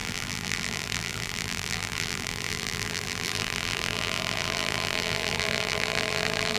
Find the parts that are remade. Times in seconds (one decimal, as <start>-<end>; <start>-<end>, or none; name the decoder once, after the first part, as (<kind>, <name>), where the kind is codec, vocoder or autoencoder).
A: 0.0-6.6 (vocoder, BigVGAN v2)